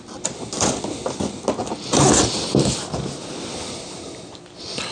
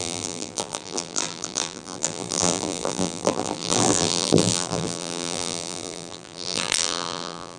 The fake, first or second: second